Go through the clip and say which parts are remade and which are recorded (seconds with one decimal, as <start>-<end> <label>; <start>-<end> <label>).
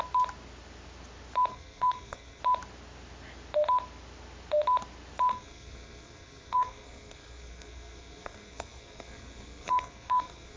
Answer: 0.0-1.5 recorded; 1.5-2.4 remade; 2.4-5.3 recorded; 5.3-10.6 remade